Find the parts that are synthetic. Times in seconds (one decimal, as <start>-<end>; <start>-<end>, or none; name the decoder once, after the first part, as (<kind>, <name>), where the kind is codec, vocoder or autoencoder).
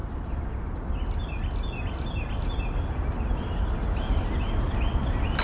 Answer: none